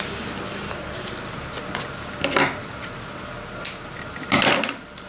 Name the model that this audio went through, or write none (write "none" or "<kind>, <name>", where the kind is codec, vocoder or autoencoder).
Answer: none